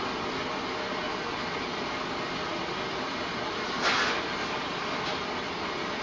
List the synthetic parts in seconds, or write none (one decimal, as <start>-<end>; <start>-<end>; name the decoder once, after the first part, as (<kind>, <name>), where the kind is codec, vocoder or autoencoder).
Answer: none

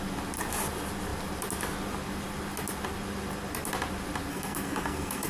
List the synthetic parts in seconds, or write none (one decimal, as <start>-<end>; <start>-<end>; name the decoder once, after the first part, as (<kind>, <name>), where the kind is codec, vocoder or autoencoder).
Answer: 4.3-5.3 (codec, SNAC)

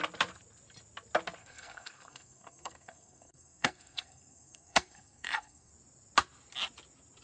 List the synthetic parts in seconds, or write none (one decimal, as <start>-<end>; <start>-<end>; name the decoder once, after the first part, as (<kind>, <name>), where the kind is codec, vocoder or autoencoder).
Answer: 1.4-5.7 (codec, SNAC)

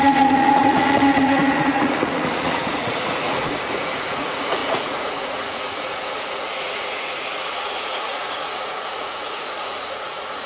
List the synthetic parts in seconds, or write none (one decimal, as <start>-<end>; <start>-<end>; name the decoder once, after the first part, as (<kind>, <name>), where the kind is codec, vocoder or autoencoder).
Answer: 0.0-10.5 (vocoder, Vocos)